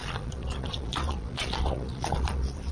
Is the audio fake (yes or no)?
yes